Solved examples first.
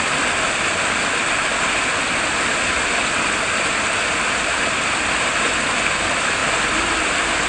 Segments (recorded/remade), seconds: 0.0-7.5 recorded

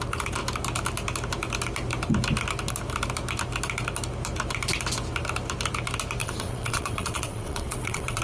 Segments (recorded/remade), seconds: 0.0-6.2 recorded; 6.2-8.2 remade

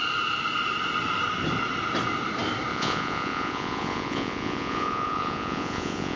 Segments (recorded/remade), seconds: 0.0-2.7 recorded; 2.7-6.2 remade

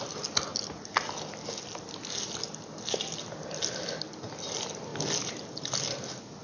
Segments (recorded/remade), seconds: 0.0-6.4 recorded

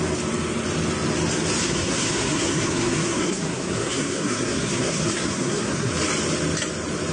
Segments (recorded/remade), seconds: 0.0-1.6 recorded; 1.6-5.9 remade; 5.9-7.1 recorded

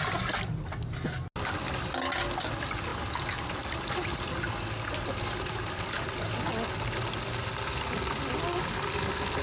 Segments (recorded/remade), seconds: 0.0-9.4 recorded

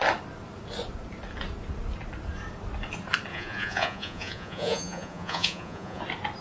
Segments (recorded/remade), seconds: 0.0-3.3 recorded; 3.3-6.0 remade; 6.0-6.4 recorded